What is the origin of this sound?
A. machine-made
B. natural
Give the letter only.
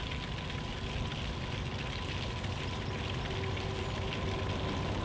B